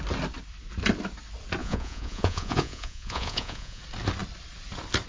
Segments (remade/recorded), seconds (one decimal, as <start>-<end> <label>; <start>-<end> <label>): 0.0-1.6 recorded; 1.6-3.8 remade; 3.8-5.1 recorded